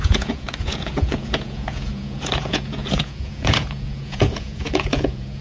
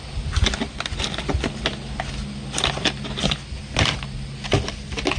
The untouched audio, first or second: second